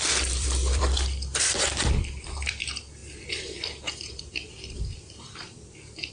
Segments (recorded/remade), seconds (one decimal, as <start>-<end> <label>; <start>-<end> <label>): 0.0-6.1 remade